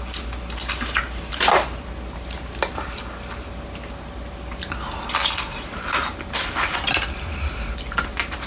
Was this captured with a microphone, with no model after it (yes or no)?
yes